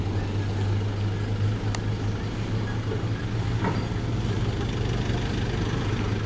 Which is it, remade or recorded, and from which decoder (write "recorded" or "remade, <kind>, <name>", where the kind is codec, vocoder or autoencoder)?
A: recorded